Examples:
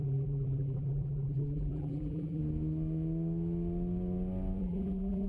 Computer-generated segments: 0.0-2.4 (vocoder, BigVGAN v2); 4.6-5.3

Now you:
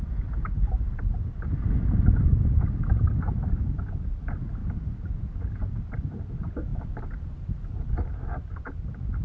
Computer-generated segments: 6.7-7.9 (vocoder, BigVGAN v2)

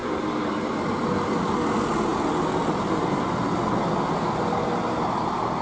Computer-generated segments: none

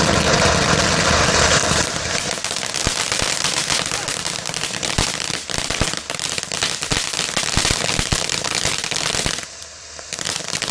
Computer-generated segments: 1.6-2.1 (vocoder, BigVGAN v2)

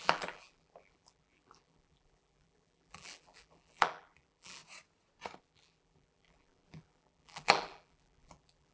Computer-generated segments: 0.0-4.6 (vocoder, BigVGAN v2); 5.4-8.7